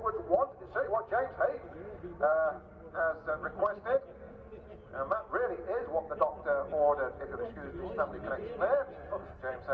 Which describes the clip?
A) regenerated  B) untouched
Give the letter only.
B